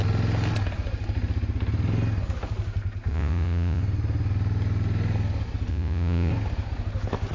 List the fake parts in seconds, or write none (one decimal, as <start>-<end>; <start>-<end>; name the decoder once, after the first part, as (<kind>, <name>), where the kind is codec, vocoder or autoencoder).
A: 3.1-3.8 (vocoder, Vocos); 5.7-6.3